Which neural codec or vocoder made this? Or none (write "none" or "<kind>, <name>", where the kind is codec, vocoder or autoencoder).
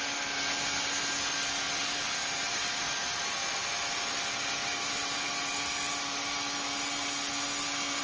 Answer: none